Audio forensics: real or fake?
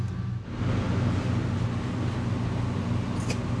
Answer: real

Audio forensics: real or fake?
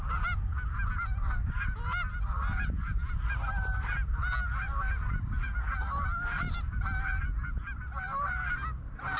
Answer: real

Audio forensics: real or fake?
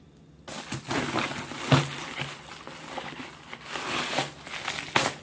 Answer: real